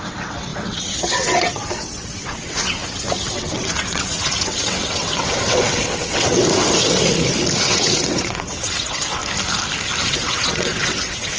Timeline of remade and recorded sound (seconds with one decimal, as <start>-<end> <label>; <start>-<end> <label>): 0.0-6.4 remade; 6.4-7.6 recorded; 7.6-9.2 remade; 9.2-10.0 recorded; 10.0-11.4 remade